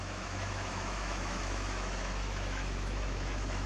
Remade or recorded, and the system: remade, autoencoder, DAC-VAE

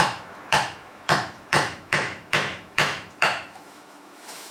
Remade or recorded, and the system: remade, autoencoder, DAC-VAE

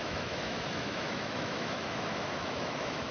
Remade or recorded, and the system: remade, autoencoder, DAC-VAE